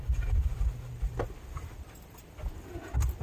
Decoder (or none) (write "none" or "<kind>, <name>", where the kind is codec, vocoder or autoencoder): none